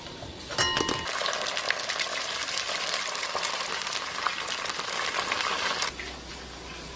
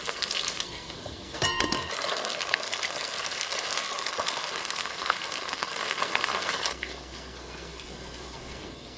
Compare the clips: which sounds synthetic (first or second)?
second